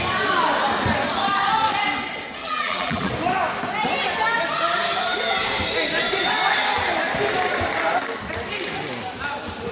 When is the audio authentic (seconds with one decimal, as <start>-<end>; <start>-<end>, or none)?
0.0-2.4; 3.1-9.7